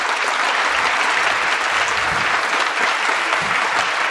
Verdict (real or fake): real